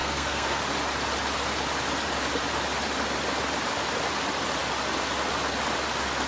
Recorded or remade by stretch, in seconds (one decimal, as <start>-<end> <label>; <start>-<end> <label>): 0.0-0.6 remade; 0.6-6.3 recorded